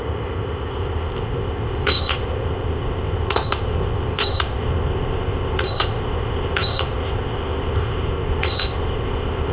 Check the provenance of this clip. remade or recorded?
remade